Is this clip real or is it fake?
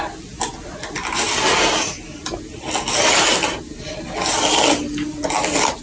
real